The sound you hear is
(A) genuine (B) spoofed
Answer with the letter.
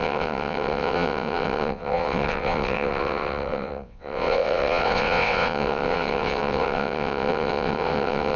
B